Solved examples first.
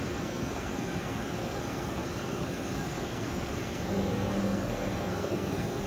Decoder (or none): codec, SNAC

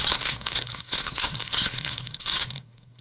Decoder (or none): codec, SNAC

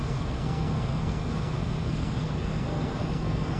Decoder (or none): codec, SNAC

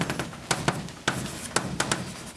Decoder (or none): none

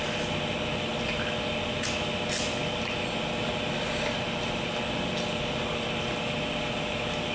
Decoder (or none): none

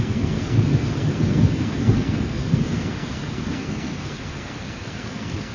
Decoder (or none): codec, SNAC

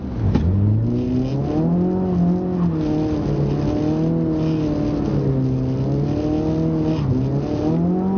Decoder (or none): none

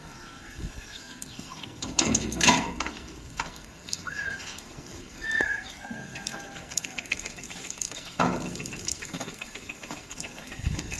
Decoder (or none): codec, SNAC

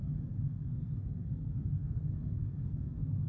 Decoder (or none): codec, SNAC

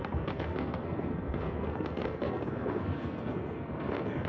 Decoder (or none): codec, SNAC